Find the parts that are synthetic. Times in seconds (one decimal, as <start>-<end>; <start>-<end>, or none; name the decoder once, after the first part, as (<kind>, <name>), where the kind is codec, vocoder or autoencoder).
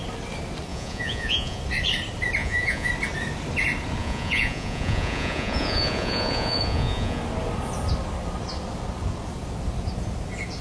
0.7-1.6 (vocoder, Vocos); 2.4-2.9; 4.0-7.2